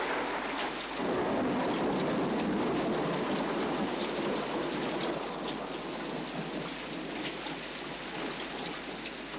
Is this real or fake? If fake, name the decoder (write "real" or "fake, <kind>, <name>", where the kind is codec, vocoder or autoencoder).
real